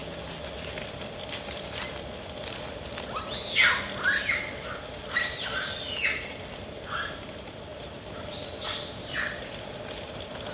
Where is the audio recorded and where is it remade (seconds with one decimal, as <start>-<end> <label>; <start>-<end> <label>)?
0.0-10.5 recorded